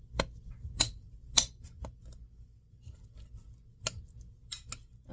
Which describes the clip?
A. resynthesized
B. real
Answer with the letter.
B